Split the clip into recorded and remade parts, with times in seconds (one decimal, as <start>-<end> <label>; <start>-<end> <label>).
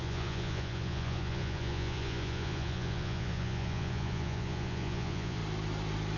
0.0-5.4 remade; 5.4-6.2 recorded